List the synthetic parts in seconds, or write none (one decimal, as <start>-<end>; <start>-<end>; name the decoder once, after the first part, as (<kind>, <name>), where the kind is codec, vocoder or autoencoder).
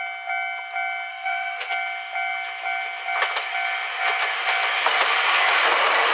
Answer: 1.1-1.7 (codec, SNAC)